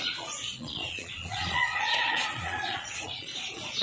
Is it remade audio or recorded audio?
remade